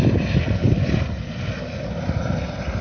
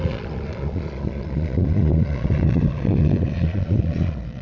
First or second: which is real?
first